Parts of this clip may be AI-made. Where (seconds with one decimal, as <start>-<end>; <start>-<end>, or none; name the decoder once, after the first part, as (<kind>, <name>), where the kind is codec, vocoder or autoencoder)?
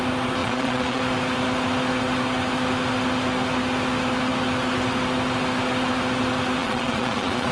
0.4-1.0 (vocoder, Vocos); 6.6-7.5